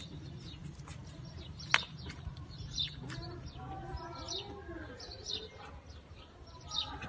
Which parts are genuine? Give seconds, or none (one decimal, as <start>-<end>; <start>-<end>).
0.0-7.1